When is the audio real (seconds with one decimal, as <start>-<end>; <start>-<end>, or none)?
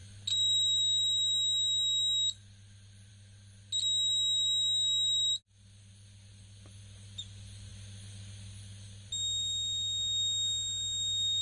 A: 0.0-11.4